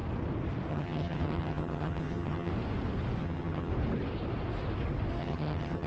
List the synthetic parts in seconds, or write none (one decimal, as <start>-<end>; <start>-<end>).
0.7-2.5; 3.2-3.7; 5.2-5.9

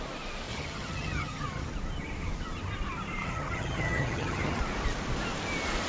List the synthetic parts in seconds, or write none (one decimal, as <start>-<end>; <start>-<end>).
0.5-1.7; 3.2-4.6

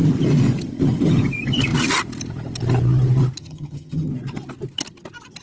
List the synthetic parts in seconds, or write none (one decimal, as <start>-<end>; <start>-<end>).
3.4-4.1

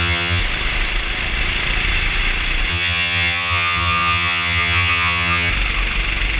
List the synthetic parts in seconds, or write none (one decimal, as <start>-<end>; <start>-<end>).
0.0-0.4; 2.7-5.5